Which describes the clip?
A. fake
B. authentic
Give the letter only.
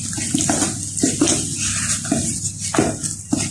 B